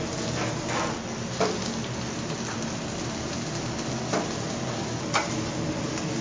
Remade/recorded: recorded